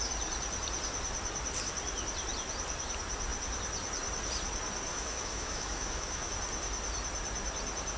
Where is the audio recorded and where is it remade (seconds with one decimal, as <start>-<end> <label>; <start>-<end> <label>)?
0.0-4.9 recorded; 4.9-6.3 remade; 6.3-8.0 recorded